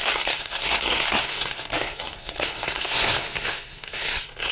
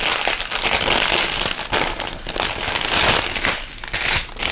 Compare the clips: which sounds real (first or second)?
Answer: second